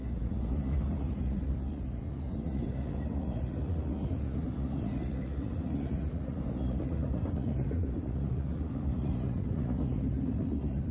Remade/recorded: remade